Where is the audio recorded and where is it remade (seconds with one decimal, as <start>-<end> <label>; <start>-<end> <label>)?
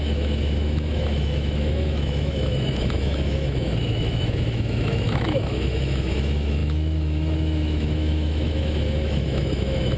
0.0-10.0 remade